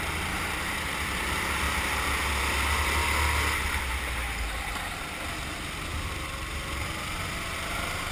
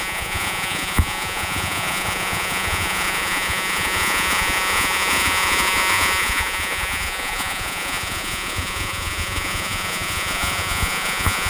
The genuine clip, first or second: first